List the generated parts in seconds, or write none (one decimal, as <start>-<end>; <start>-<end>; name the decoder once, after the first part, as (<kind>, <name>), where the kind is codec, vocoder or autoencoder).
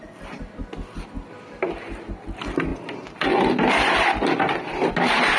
none